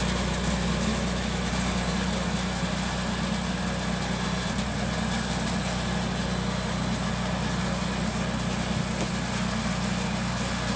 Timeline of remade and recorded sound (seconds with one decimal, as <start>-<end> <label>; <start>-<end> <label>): 0.0-0.9 recorded; 0.9-1.5 remade; 1.5-10.8 recorded